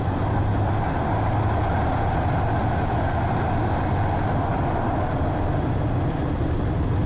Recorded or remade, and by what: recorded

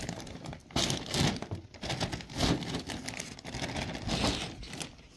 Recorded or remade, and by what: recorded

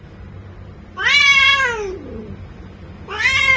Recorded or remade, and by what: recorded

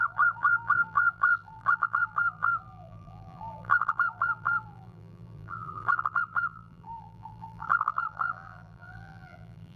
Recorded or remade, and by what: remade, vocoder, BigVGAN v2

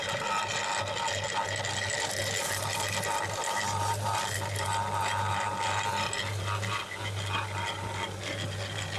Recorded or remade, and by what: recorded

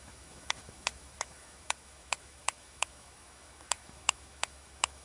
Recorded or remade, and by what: remade, autoencoder, DAC-VAE